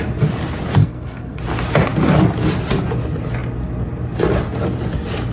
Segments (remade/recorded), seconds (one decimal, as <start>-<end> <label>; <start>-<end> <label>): 0.0-0.8 recorded; 0.8-1.4 remade; 1.4-5.3 recorded